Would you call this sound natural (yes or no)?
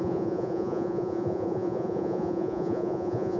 no